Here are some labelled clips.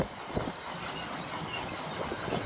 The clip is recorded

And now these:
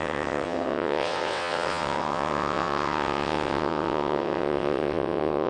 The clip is remade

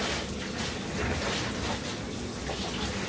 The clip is recorded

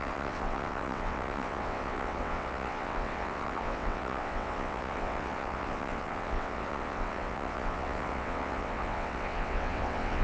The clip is remade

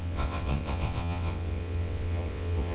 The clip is remade